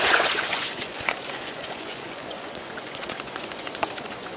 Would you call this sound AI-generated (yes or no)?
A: yes